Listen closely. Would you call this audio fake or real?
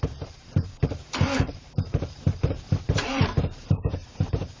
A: fake